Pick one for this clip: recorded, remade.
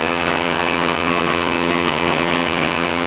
remade